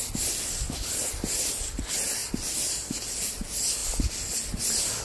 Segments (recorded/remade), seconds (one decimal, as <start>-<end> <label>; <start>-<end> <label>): 0.0-5.0 recorded